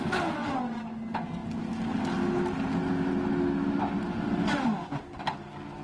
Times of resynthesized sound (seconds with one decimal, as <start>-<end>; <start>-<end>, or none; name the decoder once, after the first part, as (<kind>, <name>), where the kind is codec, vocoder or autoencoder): none